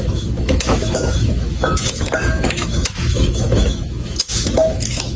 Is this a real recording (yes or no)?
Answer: no